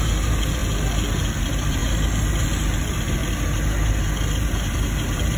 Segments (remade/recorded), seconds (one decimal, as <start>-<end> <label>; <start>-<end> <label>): 0.0-0.6 remade; 0.6-1.4 recorded; 1.4-1.8 remade; 1.8-2.4 recorded; 2.4-3.2 remade; 3.2-3.9 recorded; 3.9-5.4 remade